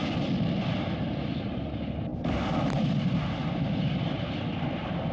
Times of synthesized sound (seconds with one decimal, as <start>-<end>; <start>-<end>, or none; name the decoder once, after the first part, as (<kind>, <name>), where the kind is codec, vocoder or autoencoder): 2.1-4.3 (vocoder, BigVGAN v2)